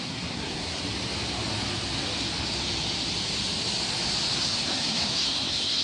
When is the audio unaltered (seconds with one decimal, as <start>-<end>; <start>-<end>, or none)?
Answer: 0.8-4.3